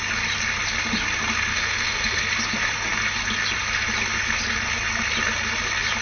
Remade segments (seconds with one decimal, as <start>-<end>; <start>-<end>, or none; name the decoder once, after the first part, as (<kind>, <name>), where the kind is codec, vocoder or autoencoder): 1.5-2.3 (codec, SNAC)